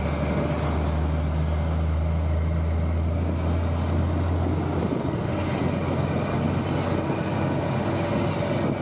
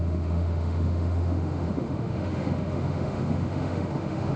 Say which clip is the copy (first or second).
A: second